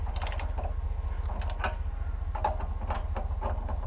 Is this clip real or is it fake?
real